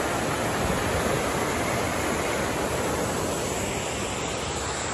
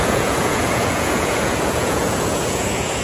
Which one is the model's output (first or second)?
second